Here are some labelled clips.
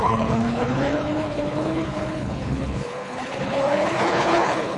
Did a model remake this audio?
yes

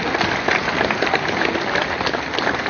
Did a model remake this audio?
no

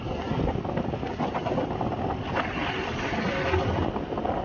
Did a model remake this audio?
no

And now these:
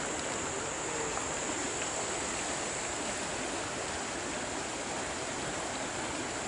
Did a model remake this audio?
no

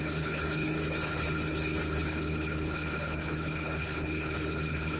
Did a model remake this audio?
yes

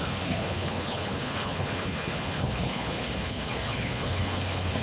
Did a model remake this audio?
yes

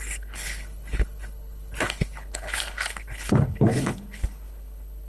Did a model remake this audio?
yes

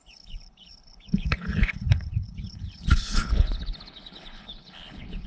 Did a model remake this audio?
yes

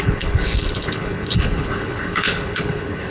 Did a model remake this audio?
yes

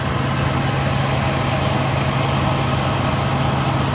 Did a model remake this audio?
no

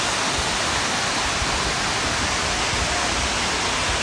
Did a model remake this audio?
no